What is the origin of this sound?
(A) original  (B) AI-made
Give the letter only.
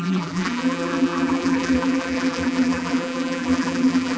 B